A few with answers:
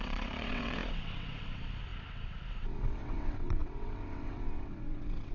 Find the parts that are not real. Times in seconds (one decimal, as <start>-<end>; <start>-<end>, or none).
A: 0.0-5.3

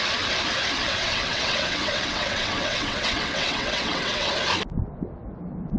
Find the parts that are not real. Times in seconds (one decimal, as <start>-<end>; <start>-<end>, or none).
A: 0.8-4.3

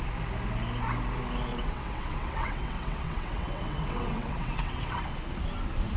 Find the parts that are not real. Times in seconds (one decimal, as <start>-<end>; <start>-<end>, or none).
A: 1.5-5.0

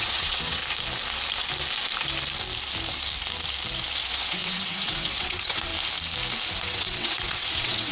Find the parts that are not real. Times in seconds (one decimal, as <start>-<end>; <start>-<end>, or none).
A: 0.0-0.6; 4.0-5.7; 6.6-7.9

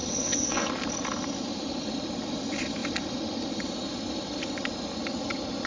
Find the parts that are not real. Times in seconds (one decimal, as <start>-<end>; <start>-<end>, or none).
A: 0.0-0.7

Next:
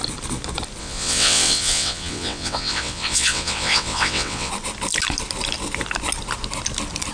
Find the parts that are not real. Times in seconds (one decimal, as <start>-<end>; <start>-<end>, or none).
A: 0.8-4.5

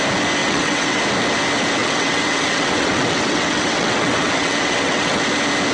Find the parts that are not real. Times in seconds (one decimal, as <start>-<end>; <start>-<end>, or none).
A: 0.4-1.0; 1.8-5.2